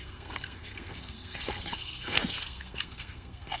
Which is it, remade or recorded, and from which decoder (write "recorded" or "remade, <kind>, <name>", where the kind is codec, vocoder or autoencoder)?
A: remade, codec, SNAC